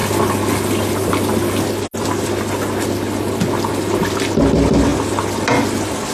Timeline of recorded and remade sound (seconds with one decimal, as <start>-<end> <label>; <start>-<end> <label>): 0.0-6.1 recorded